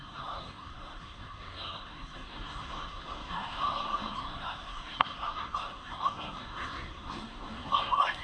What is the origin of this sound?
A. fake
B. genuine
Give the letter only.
A